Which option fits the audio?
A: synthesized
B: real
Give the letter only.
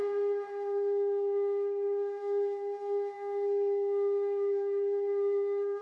A